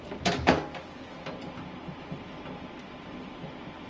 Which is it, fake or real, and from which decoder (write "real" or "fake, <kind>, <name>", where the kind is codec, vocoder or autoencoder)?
real